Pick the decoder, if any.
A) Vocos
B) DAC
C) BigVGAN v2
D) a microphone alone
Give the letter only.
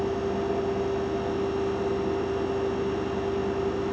D